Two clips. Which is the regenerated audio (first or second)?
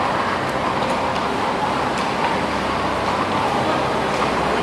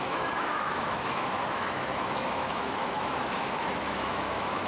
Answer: second